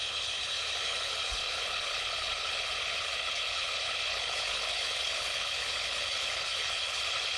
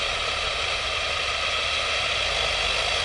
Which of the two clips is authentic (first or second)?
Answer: second